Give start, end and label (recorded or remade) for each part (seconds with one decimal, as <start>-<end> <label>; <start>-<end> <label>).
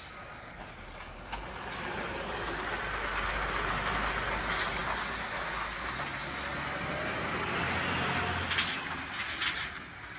0.0-10.2 recorded